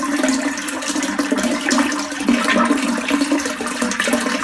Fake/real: real